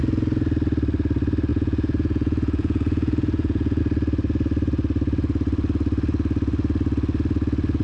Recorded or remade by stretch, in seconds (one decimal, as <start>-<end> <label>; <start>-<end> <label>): 0.0-1.5 recorded; 1.5-3.8 remade; 3.8-7.8 recorded